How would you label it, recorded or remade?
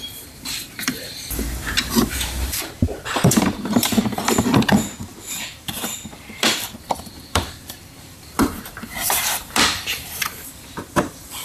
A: remade